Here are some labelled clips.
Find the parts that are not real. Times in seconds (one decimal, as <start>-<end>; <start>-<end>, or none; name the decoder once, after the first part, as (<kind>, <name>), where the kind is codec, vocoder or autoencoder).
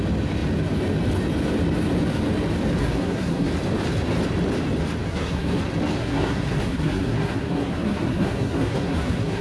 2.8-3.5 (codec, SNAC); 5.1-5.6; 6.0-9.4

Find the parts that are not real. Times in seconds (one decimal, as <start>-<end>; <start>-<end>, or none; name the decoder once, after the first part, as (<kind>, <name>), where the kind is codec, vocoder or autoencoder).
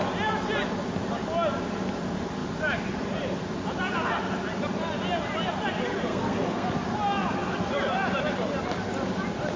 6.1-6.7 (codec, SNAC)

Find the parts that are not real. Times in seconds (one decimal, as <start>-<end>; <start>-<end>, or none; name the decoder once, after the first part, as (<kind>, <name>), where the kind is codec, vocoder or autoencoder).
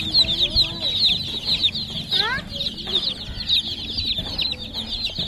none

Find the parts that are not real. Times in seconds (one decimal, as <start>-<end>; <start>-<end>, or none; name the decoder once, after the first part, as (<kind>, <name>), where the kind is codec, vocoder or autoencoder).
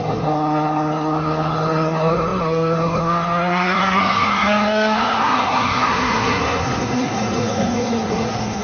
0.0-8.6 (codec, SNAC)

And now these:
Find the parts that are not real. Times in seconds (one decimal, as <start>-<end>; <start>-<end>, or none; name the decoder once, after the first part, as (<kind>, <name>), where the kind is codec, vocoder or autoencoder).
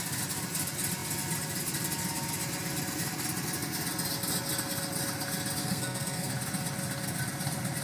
5.6-6.3 (codec, SNAC)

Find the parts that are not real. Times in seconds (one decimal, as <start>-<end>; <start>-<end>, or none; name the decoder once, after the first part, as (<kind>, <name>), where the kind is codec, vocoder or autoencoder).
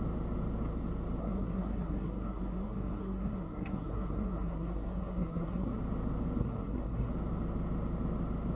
1.2-5.8 (codec, SNAC); 6.4-7.1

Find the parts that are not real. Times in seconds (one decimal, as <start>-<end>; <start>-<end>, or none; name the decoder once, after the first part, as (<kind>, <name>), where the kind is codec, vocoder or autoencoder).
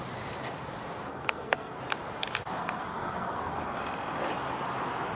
1.1-1.8 (codec, SNAC); 2.6-3.8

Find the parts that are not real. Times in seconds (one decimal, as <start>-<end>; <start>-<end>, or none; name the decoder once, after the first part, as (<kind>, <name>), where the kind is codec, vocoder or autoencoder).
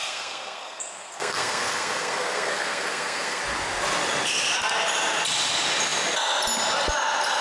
0.0-3.4 (codec, SNAC)